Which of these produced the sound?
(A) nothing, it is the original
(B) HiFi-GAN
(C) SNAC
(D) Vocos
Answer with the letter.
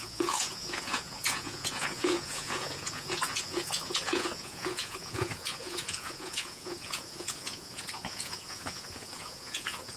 D